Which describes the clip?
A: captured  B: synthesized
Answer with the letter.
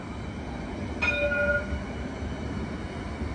A